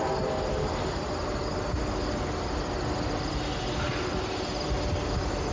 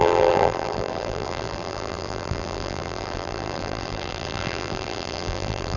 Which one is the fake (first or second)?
second